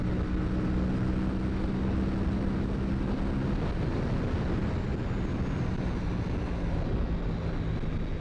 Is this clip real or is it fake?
real